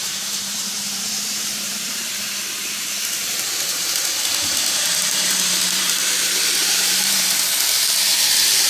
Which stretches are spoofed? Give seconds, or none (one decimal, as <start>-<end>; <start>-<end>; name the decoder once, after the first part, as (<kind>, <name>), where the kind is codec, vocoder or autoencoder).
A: 0.0-2.0 (vocoder, BigVGAN v2); 2.6-6.0; 6.6-7.3